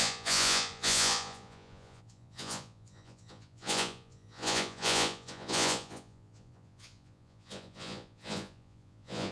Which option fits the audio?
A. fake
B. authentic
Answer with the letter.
A